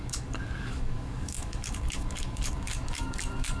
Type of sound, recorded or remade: remade